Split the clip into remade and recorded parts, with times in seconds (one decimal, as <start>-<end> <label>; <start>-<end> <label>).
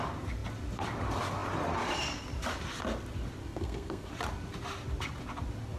0.0-3.4 recorded; 3.4-4.1 remade; 4.1-5.8 recorded